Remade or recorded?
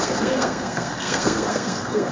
remade